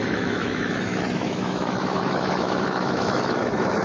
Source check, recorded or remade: remade